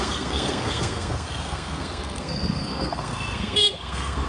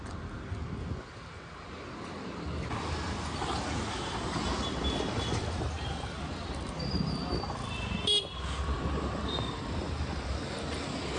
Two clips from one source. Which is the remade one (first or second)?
first